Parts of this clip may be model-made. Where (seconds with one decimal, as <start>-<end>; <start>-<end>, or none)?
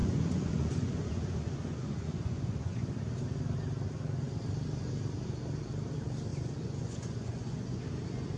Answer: 0.0-2.9; 6.3-7.8